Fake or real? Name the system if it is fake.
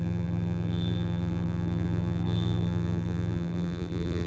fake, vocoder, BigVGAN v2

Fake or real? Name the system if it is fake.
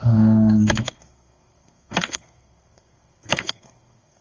fake, codec, SNAC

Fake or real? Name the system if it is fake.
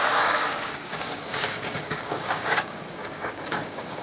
fake, codec, DAC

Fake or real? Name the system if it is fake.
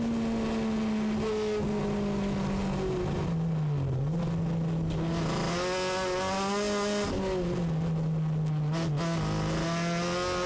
real